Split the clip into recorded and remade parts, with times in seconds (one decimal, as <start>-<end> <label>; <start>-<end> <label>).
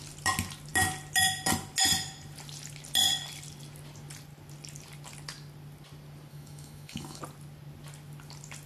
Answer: 0.0-6.3 recorded; 6.3-7.2 remade; 7.2-8.7 recorded